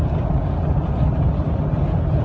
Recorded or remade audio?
recorded